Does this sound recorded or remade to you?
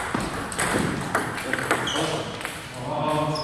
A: recorded